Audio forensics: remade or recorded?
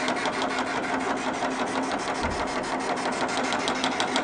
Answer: recorded